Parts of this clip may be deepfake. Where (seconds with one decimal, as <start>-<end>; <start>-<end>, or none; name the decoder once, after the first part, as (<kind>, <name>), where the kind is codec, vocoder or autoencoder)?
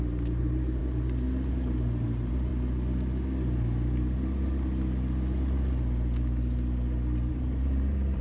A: 0.0-0.8 (vocoder, BigVGAN v2); 1.5-2.5; 7.3-8.2